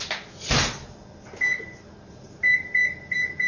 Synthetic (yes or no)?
no